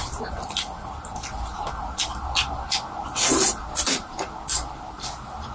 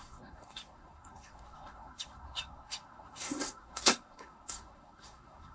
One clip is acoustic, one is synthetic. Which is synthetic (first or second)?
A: second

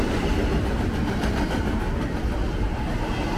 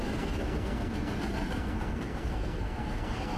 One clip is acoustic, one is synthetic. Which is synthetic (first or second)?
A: second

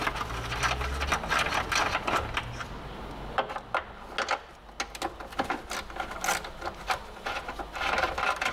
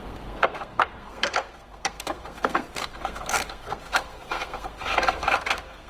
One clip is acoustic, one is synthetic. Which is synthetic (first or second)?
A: second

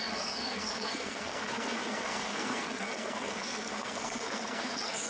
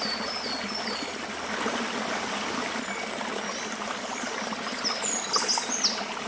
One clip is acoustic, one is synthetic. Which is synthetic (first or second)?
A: first